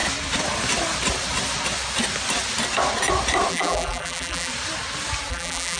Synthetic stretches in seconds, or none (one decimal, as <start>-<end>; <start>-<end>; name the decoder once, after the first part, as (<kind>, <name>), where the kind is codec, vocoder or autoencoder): 3.5-4.5 (vocoder, BigVGAN v2); 5.3-5.8